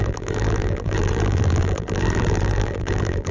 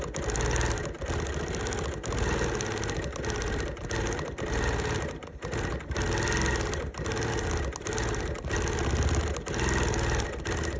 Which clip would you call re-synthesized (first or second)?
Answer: first